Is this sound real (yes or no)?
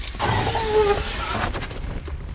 yes